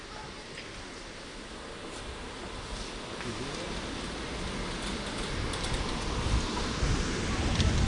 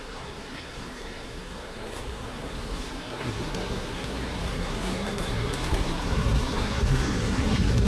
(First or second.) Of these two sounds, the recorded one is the first